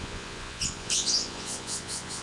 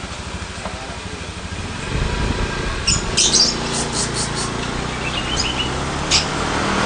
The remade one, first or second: first